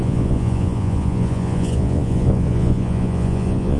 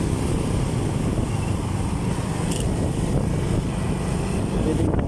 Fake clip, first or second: first